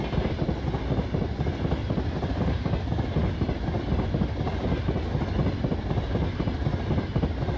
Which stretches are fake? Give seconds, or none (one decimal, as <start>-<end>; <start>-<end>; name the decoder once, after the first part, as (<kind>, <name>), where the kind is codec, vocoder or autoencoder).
1.8-4.1 (vocoder, BigVGAN v2)